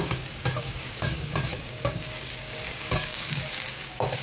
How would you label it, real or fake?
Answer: fake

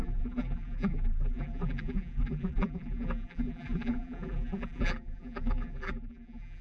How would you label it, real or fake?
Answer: fake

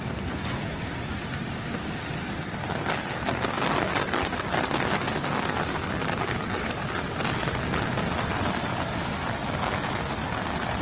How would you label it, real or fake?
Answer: real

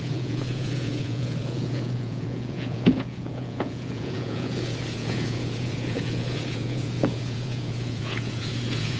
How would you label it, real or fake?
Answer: fake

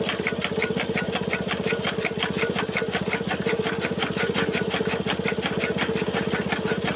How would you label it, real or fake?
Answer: real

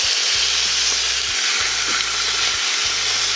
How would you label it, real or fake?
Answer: real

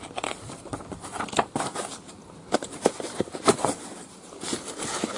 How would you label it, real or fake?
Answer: fake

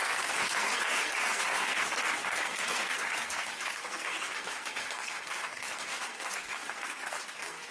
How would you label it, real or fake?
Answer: fake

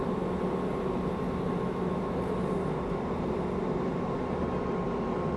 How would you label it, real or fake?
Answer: real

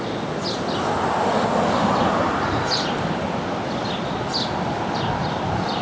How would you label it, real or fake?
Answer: real